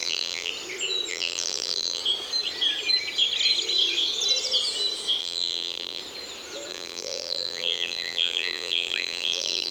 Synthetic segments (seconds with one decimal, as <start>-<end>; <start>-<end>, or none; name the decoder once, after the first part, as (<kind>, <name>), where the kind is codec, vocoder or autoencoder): 0.0-0.5 (vocoder, BigVGAN v2); 1.1-2.0; 5.2-6.0; 6.7-9.7